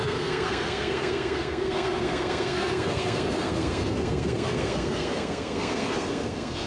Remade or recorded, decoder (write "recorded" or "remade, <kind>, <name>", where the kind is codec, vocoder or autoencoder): remade, codec, SNAC